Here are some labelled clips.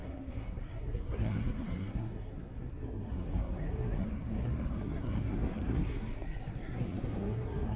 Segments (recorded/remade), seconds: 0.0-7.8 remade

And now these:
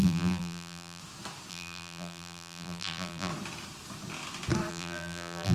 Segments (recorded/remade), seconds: 0.0-1.0 remade; 1.0-1.5 recorded; 1.5-3.3 remade; 3.3-4.7 recorded; 4.7-5.5 remade

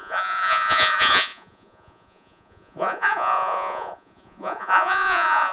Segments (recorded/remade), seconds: 0.0-5.5 remade

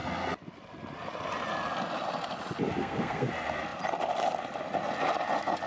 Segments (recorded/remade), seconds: 0.0-2.8 recorded; 2.8-3.3 remade; 3.3-5.7 recorded

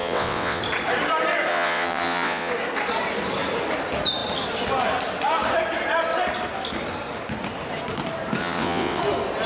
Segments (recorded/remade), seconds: 0.0-0.6 remade; 0.6-1.5 recorded; 1.5-2.5 remade; 2.5-8.4 recorded; 8.4-9.0 remade; 9.0-9.5 recorded

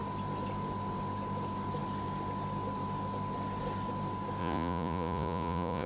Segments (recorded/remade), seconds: 0.0-4.4 recorded; 4.4-5.9 remade